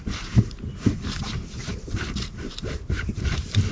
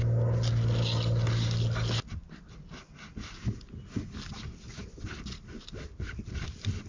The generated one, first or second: first